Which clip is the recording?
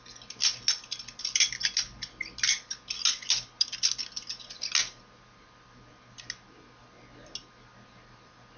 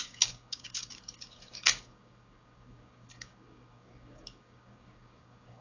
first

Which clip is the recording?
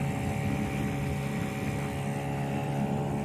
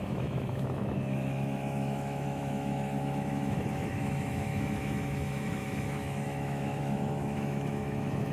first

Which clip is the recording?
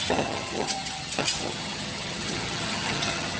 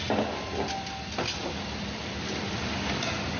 second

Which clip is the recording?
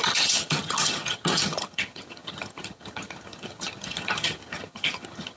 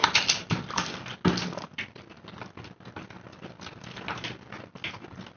second